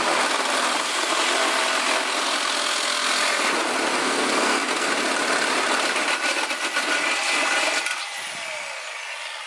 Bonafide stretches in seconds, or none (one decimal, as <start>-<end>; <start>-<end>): 0.0-4.0; 4.9-9.5